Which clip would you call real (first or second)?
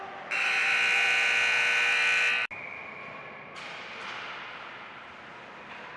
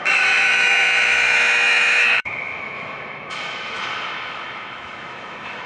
first